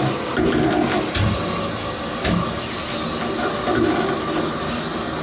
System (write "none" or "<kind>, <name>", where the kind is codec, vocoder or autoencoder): none